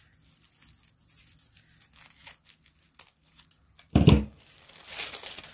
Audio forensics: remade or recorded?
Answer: recorded